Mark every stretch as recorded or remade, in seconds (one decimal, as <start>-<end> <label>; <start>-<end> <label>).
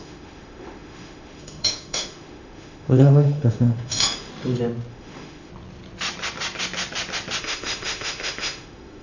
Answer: 0.0-4.3 remade; 4.3-4.9 recorded; 4.9-5.5 remade; 5.5-7.4 recorded; 7.4-9.0 remade